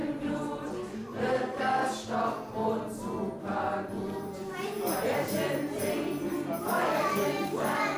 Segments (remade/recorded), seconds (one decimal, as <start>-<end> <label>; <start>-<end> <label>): 0.0-1.3 recorded; 1.3-1.8 remade; 1.8-6.6 recorded; 6.6-8.0 remade